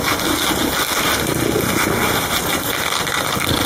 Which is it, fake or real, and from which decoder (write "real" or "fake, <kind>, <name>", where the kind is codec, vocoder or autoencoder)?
real